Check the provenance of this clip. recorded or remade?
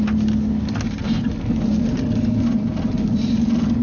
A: recorded